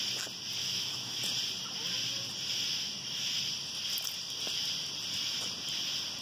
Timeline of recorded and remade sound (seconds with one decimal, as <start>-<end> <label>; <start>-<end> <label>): 0.0-0.6 recorded; 0.6-1.2 remade; 1.2-6.2 recorded